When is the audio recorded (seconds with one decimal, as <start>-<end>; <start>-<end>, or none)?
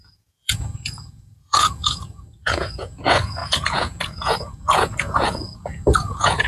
none